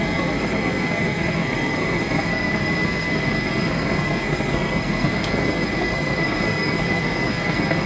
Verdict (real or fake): fake